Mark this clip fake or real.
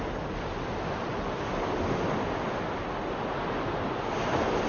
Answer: real